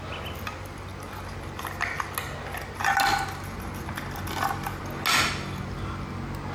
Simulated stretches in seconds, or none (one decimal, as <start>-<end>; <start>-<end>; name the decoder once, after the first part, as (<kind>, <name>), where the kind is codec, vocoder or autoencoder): none